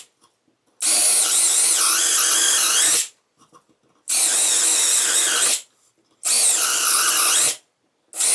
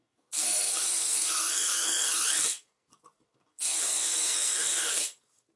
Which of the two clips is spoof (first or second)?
second